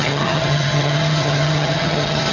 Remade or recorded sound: remade